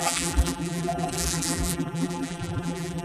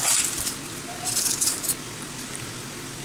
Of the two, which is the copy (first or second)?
first